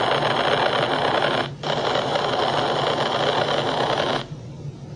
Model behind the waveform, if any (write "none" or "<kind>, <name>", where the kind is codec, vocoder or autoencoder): none